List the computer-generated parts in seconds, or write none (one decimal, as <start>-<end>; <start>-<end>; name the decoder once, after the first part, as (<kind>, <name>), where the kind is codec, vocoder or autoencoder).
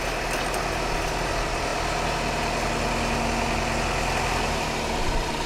none